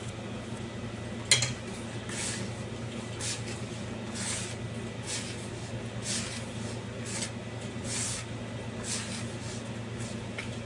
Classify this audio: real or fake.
real